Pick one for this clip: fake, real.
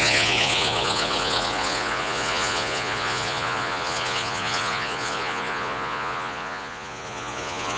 fake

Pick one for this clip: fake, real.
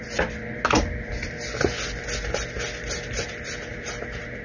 real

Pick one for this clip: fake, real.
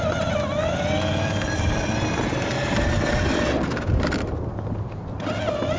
real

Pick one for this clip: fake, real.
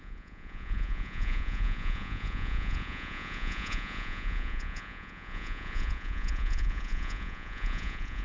fake